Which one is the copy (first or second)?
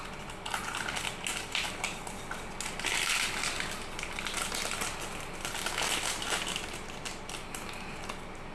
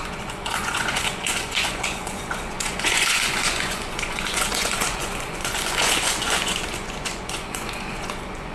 second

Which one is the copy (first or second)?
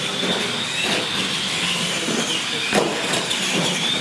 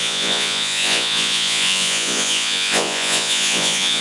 second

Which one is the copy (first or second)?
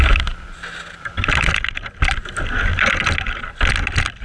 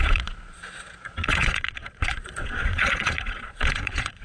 second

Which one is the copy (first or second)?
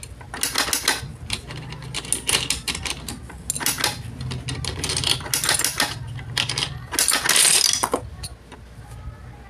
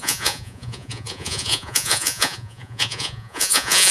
second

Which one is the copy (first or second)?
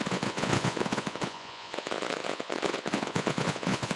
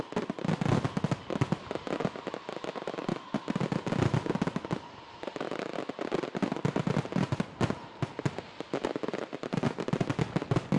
first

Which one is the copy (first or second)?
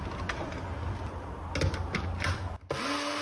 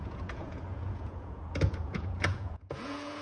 second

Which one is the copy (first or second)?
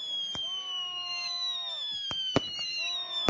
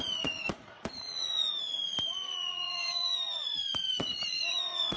second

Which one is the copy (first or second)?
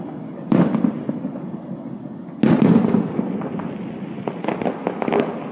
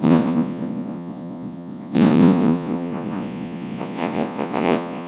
second